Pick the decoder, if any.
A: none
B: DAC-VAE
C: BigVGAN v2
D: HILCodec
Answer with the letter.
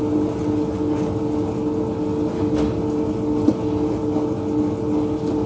A